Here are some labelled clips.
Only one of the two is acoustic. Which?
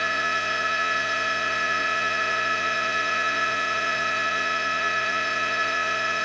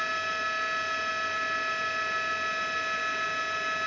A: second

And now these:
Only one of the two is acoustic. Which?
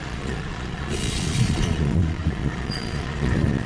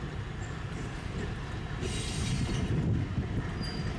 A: second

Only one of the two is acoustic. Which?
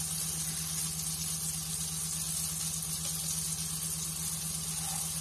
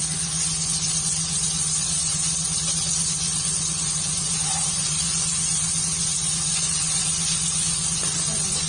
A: first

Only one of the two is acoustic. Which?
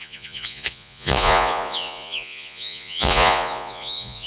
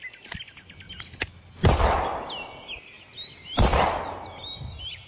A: second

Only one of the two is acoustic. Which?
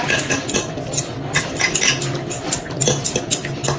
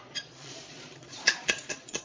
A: first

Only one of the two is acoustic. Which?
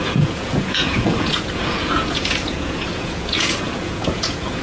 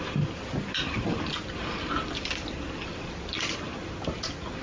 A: second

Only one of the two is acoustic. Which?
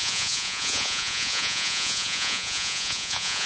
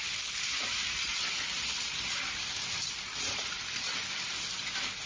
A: second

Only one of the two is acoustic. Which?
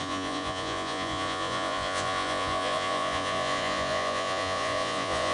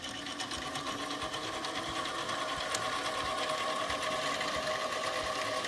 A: second